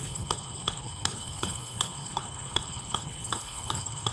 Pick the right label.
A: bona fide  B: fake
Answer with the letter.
B